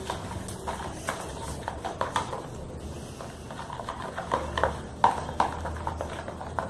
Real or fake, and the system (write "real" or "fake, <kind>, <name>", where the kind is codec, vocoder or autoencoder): real